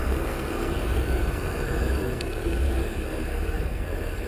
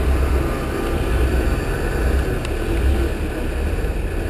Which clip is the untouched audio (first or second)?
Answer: second